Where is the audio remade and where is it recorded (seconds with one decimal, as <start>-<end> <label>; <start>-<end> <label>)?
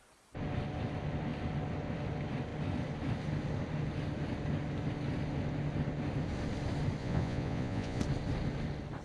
0.0-7.0 recorded; 7.0-8.0 remade; 8.0-9.0 recorded